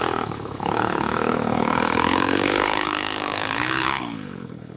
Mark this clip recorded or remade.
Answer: remade